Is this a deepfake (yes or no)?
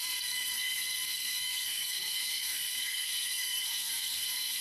yes